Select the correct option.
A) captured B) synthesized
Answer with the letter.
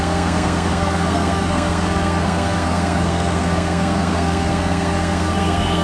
B